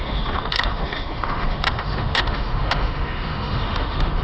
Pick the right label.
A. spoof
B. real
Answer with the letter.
A